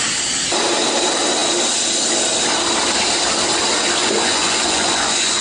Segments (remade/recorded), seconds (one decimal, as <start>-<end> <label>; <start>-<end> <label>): 0.0-4.0 recorded; 4.0-5.4 remade